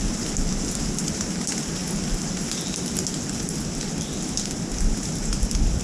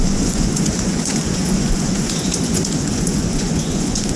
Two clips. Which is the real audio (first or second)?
first